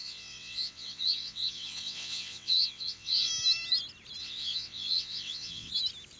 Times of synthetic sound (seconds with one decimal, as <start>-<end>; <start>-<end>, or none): 0.0-3.3; 4.2-5.7